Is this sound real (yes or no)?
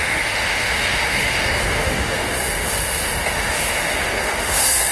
no